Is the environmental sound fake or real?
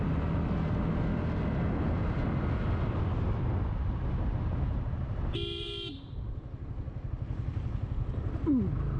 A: real